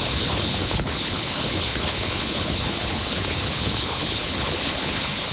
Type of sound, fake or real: fake